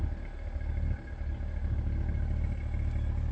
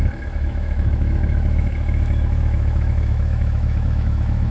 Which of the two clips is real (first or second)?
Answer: first